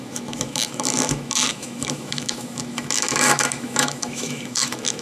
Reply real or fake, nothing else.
fake